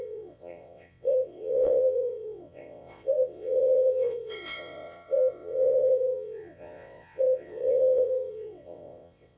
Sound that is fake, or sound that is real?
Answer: fake